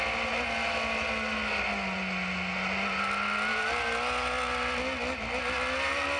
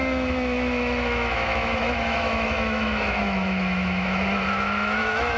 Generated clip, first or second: second